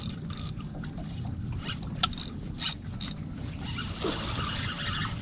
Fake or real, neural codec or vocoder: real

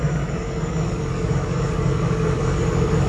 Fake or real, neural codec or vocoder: fake, codec, DAC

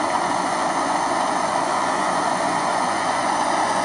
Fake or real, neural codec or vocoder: fake, vocoder, Vocos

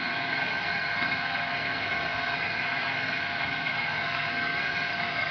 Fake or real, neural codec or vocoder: fake, codec, SNAC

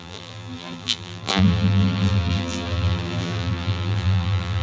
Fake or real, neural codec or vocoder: fake, vocoder, BigVGAN v2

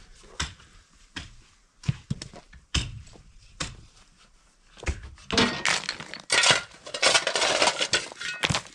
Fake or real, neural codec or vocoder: real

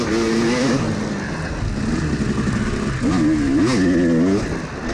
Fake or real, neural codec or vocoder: real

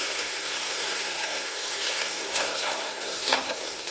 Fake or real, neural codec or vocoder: fake, codec, SNAC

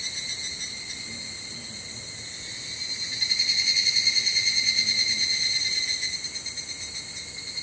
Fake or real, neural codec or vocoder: real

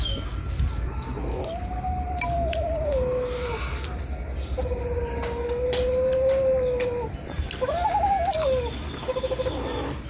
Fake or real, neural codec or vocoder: real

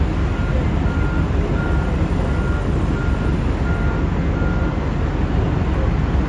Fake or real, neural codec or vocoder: real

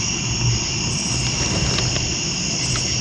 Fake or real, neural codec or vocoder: real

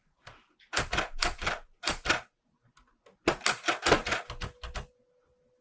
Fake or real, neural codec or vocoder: real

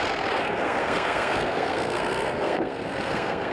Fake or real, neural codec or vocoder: fake, codec, SNAC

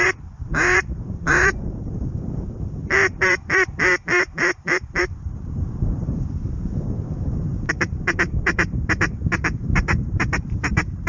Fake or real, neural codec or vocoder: fake, vocoder, BigVGAN v2